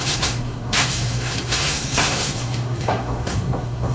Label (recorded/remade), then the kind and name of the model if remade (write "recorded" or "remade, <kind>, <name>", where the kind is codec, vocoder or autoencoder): remade, codec, SNAC